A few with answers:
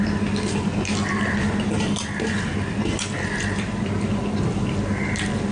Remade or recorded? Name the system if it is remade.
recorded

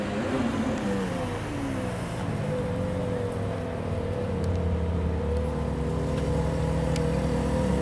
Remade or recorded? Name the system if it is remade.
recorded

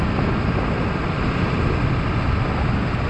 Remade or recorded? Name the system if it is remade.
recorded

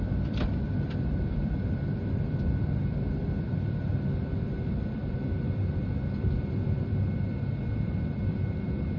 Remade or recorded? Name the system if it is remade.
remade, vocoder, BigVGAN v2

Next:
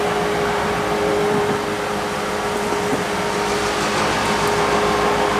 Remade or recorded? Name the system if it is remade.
recorded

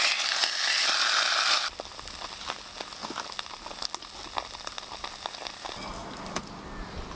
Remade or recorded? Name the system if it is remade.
recorded